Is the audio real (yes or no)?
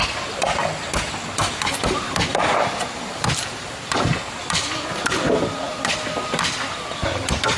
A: yes